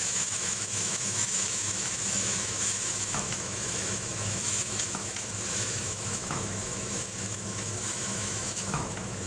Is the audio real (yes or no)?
no